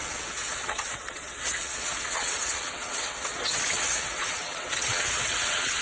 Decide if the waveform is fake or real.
fake